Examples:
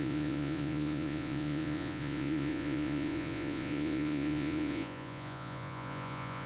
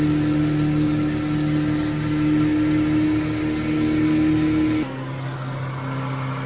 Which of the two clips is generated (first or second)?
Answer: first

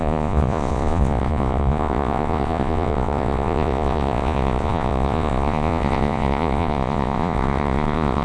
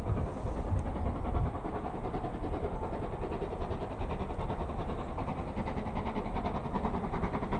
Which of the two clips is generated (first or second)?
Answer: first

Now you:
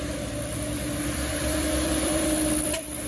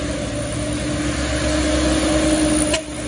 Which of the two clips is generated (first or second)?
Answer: first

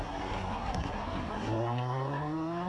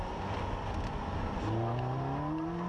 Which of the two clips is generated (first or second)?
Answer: first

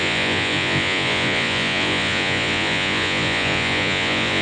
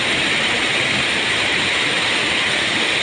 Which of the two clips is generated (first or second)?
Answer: first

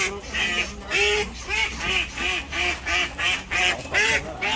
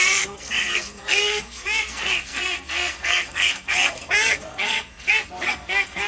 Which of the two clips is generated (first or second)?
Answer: second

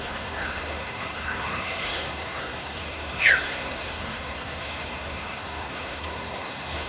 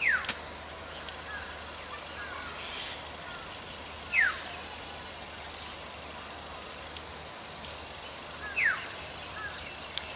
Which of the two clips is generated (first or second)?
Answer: first